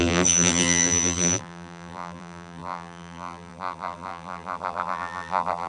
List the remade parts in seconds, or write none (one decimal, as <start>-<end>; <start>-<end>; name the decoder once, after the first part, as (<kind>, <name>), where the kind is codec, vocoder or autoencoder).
0.0-5.7 (vocoder, BigVGAN v2)